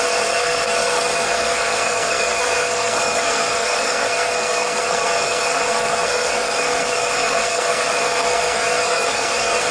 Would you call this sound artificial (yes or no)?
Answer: yes